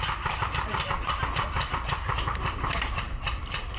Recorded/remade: recorded